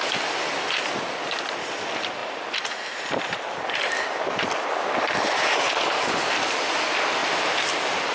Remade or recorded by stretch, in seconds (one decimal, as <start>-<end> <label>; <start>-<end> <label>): 0.0-8.1 recorded